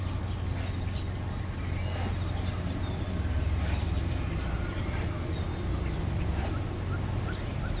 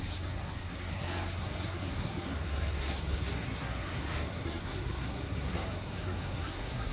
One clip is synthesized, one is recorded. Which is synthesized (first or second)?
second